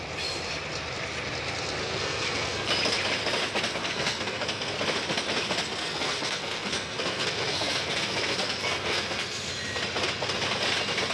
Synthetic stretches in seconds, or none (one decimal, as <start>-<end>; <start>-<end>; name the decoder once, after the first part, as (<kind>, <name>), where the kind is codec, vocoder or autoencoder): 1.8-2.7 (codec, SNAC); 3.8-4.7; 5.8-9.5